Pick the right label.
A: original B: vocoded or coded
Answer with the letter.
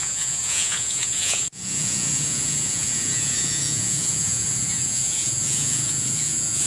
B